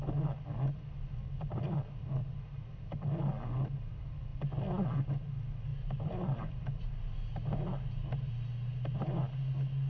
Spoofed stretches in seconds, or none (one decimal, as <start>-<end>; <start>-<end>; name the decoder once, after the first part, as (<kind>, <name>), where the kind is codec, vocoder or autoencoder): 2.2-3.1 (vocoder, BigVGAN v2); 5.7-6.9